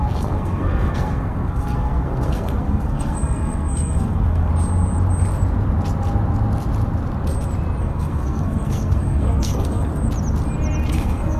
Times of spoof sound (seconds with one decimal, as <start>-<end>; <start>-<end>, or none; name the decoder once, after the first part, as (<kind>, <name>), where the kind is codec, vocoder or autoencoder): 0.0-4.5 (codec, SNAC); 7.8-9.9; 10.9-11.4